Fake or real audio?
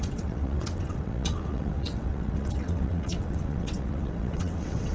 fake